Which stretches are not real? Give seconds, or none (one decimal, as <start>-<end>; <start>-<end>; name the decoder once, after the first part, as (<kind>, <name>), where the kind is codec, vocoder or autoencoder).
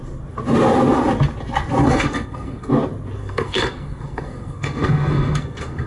1.8-2.7 (codec, SNAC); 3.2-5.9